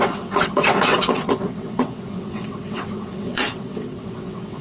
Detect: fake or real fake